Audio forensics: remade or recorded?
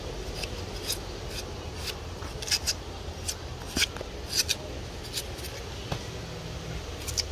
recorded